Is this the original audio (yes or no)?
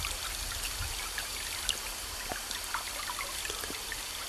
yes